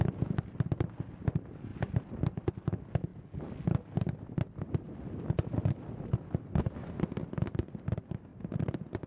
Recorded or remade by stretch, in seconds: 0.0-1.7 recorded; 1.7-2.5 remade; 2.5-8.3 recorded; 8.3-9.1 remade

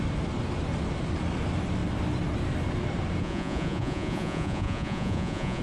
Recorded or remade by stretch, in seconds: 0.0-3.2 recorded; 3.2-5.6 remade

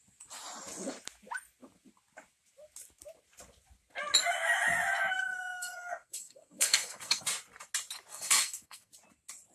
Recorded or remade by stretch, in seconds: 0.0-5.1 recorded; 5.1-7.2 remade; 7.2-8.1 recorded; 8.1-8.9 remade; 8.9-9.5 recorded

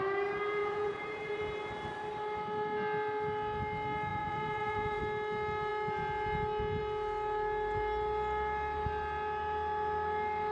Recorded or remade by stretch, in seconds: 0.0-0.6 recorded; 0.6-1.4 remade; 1.4-4.1 recorded; 4.1-5.0 remade; 5.0-10.5 recorded

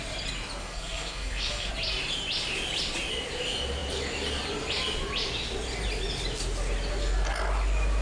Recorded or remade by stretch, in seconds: 0.0-0.6 recorded; 0.6-1.7 remade; 1.7-8.0 recorded

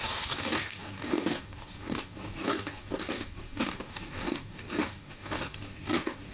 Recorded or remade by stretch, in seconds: 0.0-6.3 remade